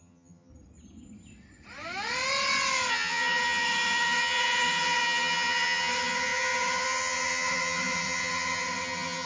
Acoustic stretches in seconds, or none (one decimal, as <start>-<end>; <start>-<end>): 0.5-2.9